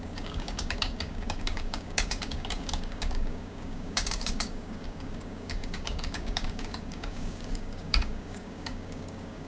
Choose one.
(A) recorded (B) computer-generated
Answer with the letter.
B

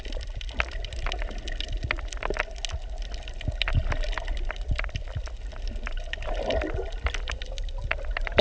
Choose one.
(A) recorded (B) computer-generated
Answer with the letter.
A